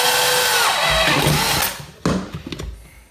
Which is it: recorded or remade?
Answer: recorded